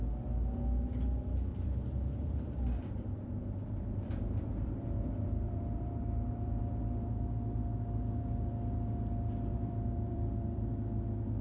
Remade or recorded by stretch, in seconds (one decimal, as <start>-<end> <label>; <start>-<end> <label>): 0.0-1.5 recorded; 1.5-6.6 remade; 6.6-9.5 recorded; 9.5-10.7 remade; 10.7-11.4 recorded